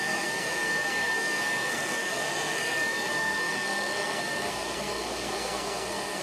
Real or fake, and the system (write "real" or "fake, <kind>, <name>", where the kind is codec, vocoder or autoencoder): fake, codec, SNAC